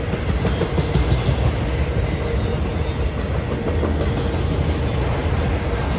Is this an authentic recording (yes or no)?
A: yes